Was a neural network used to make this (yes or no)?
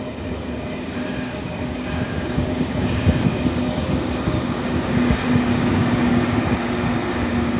yes